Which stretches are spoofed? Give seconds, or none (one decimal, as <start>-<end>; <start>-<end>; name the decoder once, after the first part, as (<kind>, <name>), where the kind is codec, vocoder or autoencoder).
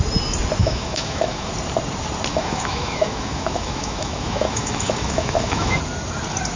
0.6-1.5 (autoencoder, DAC-VAE); 2.3-5.8